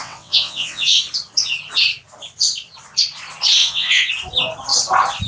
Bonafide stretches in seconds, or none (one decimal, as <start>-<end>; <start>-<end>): 1.0-3.6; 4.1-5.3